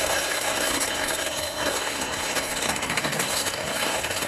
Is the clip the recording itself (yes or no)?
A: no